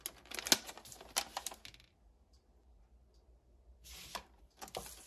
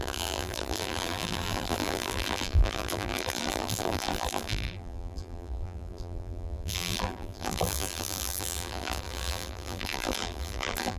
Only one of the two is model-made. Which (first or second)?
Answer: second